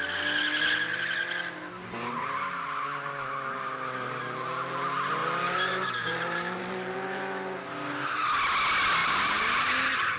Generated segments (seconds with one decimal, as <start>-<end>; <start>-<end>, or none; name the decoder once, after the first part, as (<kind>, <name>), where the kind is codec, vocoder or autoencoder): 5.2-7.2 (vocoder, BigVGAN v2); 9.0-10.2